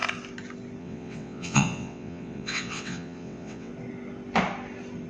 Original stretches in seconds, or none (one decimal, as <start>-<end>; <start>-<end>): 0.0-0.8; 3.7-5.1